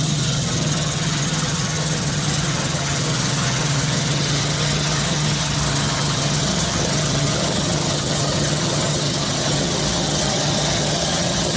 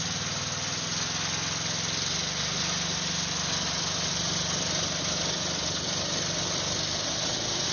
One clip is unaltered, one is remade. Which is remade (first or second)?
first